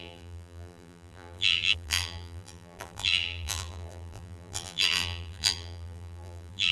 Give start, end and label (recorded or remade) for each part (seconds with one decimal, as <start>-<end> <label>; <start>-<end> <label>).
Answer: 0.0-6.7 remade